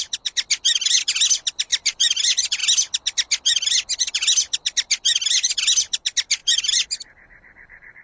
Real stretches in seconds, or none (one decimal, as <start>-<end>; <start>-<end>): 0.0-1.7; 2.2-6.4